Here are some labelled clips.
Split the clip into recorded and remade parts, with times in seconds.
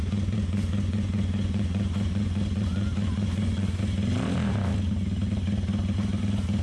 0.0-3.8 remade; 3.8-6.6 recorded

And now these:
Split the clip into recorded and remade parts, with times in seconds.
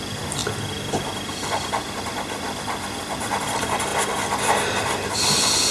0.0-5.7 recorded